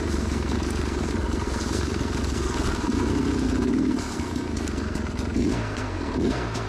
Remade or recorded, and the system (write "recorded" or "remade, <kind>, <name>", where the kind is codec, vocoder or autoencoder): remade, codec, SNAC